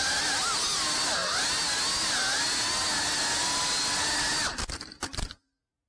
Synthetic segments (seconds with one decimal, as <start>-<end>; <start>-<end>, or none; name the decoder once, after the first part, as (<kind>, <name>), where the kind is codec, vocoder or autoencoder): none